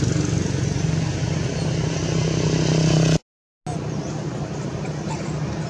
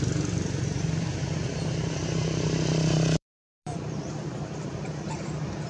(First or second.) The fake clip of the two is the second